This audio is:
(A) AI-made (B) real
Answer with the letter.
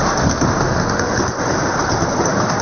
B